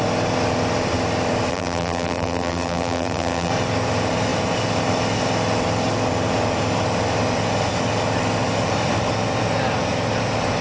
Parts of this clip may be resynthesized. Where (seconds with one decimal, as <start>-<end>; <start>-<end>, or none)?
1.5-3.5